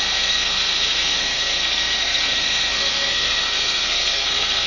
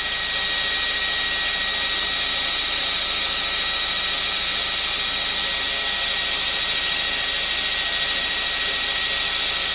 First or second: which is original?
second